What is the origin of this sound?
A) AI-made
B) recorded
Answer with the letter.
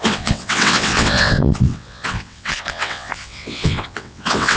A